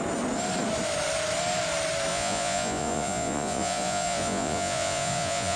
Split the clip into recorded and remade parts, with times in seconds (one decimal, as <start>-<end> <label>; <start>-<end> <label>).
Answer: 0.0-2.1 recorded; 2.1-5.6 remade